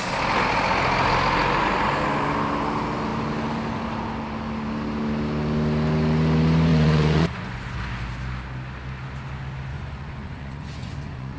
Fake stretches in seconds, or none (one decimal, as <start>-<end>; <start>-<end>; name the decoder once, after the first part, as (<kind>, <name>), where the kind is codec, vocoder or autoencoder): 6.7-7.9 (vocoder, Vocos); 9.7-11.4